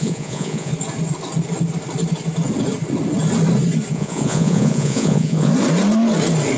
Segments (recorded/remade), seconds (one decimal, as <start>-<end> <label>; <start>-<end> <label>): 0.0-0.7 remade; 0.7-3.9 recorded; 3.9-5.5 remade; 5.5-6.6 recorded